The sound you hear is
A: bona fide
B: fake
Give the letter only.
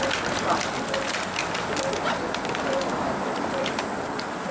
B